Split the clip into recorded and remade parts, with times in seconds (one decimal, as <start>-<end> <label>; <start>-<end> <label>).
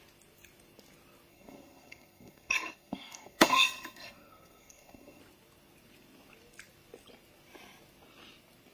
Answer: 0.0-1.3 recorded; 1.3-5.2 remade; 5.2-8.7 recorded